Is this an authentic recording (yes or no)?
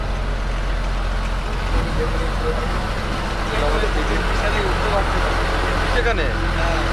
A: yes